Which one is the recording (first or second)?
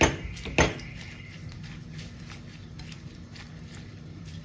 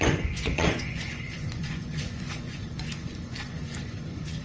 first